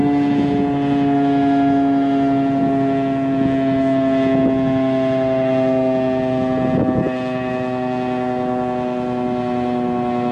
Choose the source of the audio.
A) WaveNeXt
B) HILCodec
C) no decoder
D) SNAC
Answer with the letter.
C